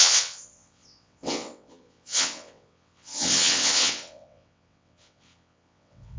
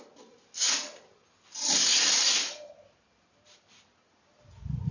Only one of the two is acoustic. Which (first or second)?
second